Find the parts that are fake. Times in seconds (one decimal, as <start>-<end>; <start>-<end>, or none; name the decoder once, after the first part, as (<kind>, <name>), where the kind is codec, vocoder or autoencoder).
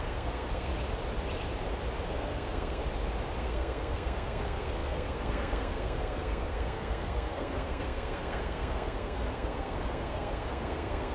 0.0-0.7 (codec, SNAC); 2.1-2.8; 3.4-11.1